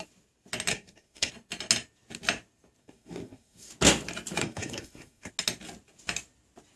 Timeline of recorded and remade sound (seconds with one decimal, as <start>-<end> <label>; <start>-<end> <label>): 0.0-0.7 recorded; 0.7-1.3 remade; 1.3-2.8 recorded; 2.8-3.7 remade; 3.7-4.4 recorded; 4.4-5.3 remade; 5.3-6.8 recorded